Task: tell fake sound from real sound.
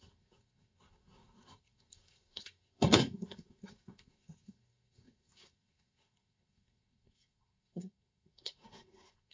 fake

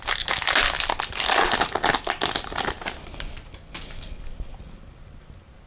real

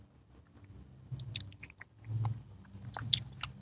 real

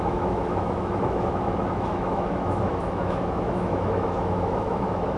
fake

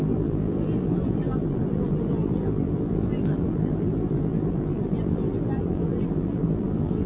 fake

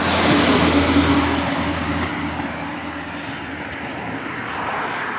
real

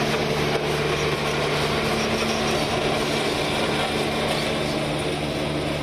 real